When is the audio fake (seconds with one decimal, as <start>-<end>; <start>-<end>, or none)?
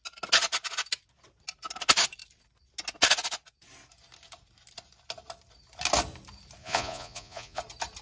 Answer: 6.6-7.6